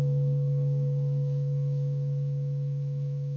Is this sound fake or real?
fake